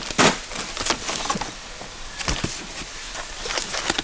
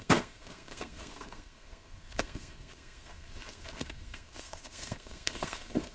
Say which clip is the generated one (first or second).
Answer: second